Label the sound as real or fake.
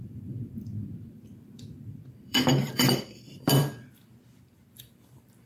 fake